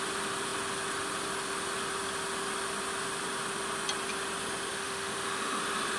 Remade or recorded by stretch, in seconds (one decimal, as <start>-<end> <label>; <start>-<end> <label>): 0.0-4.7 recorded; 4.7-5.6 remade; 5.6-6.0 recorded